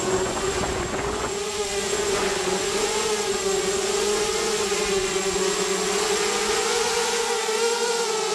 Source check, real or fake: fake